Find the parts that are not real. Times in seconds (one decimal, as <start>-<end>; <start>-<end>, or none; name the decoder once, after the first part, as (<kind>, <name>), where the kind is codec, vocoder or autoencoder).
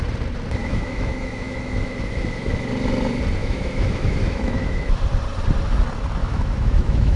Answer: 0.6-2.7 (autoencoder, DAC-VAE); 3.4-5.0; 6.2-7.2